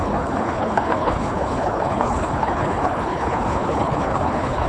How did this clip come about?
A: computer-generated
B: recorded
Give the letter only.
A